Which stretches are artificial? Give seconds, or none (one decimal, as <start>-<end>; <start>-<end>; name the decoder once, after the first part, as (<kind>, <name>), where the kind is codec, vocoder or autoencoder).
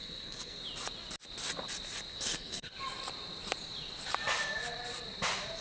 0.0-0.6 (codec, SNAC); 2.1-2.7